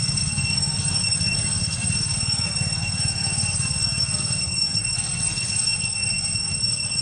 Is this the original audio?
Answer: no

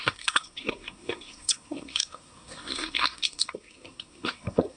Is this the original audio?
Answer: no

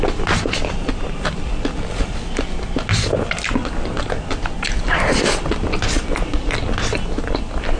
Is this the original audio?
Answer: yes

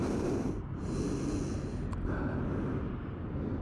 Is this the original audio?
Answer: yes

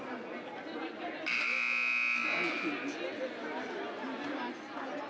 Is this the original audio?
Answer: yes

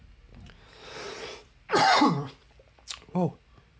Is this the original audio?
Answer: yes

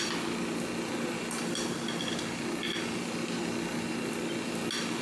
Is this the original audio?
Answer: yes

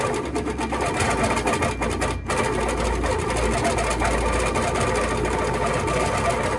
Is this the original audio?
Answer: yes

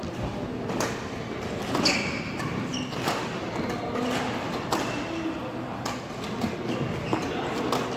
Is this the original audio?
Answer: yes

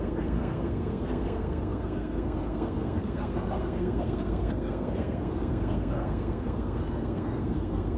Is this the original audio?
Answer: no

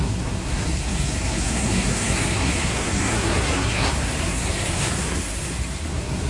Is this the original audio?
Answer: no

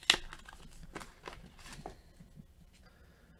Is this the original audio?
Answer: yes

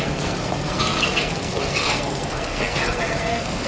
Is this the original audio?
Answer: no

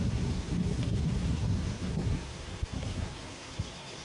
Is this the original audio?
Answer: no